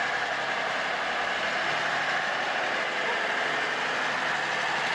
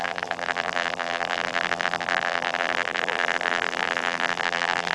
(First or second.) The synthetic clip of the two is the second